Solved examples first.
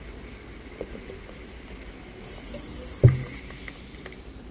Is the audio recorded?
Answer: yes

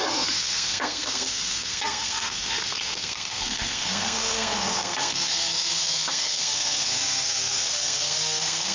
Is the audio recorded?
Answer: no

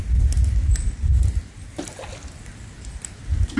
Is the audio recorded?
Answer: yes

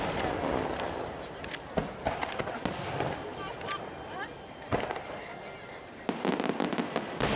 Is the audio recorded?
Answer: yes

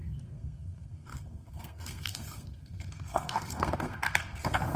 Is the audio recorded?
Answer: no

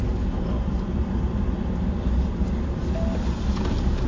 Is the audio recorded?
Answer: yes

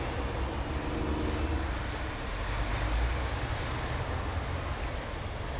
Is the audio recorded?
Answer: yes